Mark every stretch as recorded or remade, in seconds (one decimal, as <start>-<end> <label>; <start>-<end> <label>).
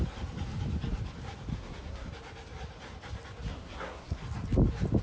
0.0-1.5 recorded; 1.5-2.1 remade; 2.1-3.5 recorded; 3.5-4.2 remade; 4.2-5.0 recorded